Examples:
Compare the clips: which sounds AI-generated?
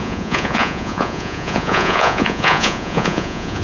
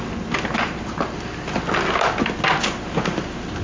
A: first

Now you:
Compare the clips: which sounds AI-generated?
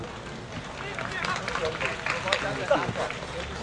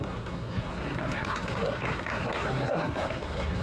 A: second